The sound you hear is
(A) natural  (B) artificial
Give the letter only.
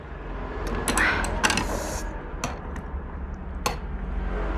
A